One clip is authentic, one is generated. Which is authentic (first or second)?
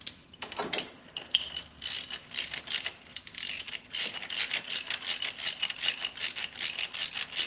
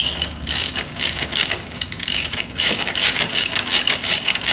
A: first